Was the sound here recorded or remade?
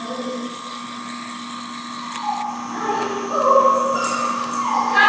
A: recorded